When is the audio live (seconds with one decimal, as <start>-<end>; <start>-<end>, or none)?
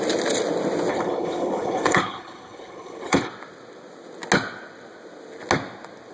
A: 0.0-0.9; 3.3-6.1